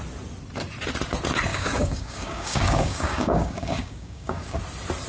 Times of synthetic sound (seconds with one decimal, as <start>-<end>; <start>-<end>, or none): 1.5-4.6